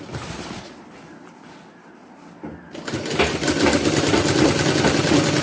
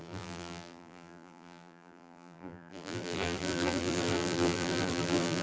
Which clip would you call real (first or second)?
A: first